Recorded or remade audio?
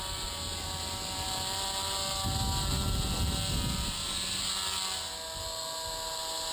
recorded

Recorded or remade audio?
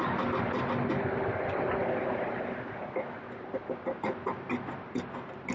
recorded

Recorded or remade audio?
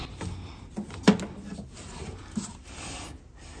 recorded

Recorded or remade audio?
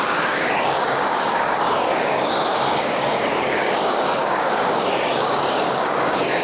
remade